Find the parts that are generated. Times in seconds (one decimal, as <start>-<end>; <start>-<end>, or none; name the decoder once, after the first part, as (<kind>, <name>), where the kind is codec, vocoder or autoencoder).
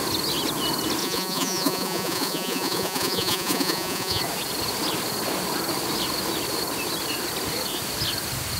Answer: 1.0-4.2 (vocoder, Vocos)